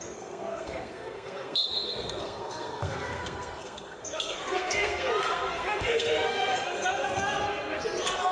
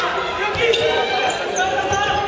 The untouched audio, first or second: second